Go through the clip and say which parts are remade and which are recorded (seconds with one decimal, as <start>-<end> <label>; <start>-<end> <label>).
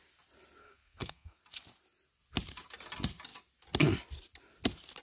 0.0-0.6 recorded; 0.6-1.4 remade; 1.4-5.0 recorded